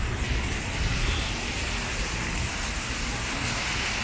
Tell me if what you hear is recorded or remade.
recorded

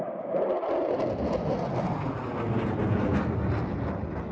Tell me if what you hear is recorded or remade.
recorded